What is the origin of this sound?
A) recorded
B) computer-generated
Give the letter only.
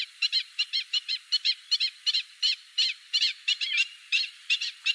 B